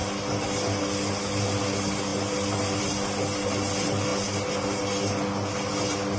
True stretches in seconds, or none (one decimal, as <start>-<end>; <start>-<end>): 0.0-6.2

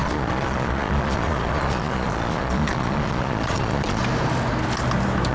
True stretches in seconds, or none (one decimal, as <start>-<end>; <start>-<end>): 4.0-5.3

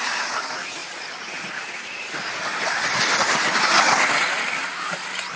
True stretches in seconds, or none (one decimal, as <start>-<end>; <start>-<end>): 0.0-5.4

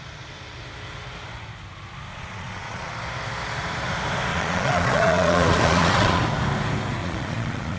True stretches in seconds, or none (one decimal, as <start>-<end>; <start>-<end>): 0.0-2.1; 2.9-4.3; 6.2-7.0

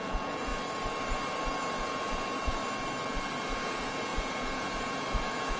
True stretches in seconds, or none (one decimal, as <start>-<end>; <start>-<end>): 0.5-1.8; 2.6-3.6

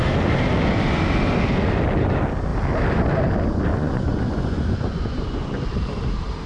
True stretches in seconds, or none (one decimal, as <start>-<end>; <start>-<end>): 0.0-3.7; 5.6-6.5

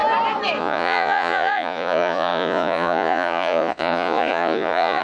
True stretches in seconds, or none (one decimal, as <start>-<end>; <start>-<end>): 0.0-0.6

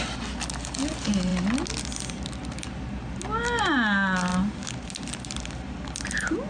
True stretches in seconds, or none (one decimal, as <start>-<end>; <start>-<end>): 0.0-6.5